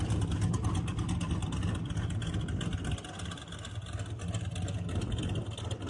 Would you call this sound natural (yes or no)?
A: yes